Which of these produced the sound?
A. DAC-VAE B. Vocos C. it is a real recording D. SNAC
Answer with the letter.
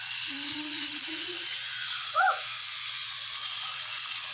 B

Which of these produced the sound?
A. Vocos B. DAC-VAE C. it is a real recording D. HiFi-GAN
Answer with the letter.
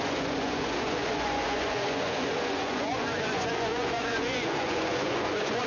A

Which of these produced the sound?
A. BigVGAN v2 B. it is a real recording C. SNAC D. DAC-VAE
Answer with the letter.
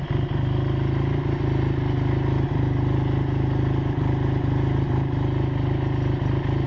B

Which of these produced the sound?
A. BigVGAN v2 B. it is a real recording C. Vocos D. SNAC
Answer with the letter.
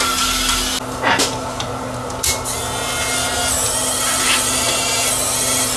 B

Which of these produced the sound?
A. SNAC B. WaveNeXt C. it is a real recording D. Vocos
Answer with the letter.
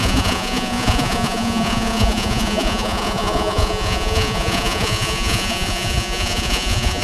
D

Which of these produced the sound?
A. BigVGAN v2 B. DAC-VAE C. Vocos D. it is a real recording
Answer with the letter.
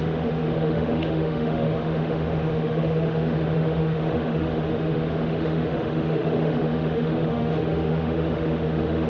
B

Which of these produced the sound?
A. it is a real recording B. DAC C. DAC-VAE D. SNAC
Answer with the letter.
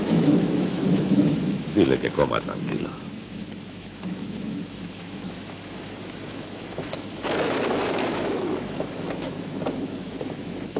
C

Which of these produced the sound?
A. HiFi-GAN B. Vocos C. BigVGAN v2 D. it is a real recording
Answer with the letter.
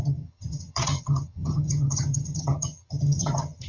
A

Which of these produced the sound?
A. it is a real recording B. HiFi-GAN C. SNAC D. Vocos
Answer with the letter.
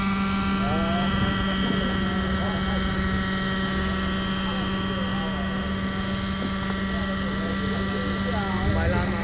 A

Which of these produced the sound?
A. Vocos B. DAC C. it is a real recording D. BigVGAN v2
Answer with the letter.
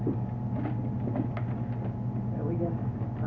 C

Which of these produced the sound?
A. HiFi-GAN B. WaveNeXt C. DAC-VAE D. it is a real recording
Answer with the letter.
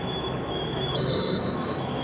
C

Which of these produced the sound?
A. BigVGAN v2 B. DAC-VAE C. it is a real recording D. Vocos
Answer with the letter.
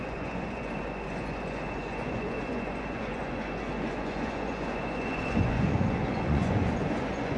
D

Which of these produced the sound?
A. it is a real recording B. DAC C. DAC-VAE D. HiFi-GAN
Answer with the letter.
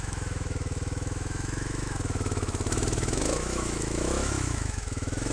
C